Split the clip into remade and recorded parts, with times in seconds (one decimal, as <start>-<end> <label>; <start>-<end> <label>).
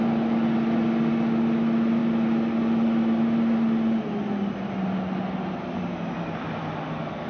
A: 0.0-7.3 recorded